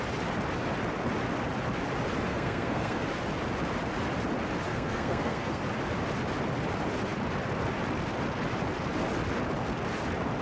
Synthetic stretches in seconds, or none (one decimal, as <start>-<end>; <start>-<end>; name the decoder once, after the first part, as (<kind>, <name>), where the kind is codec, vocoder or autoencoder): 2.3-3.0 (codec, SNAC); 4.7-5.6